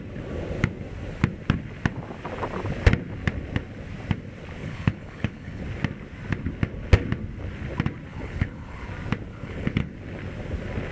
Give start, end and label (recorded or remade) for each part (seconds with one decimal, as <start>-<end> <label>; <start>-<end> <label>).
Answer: 0.0-4.6 recorded; 4.6-5.6 remade; 5.6-8.1 recorded; 8.1-8.9 remade; 8.9-9.3 recorded; 9.3-9.9 remade; 9.9-10.9 recorded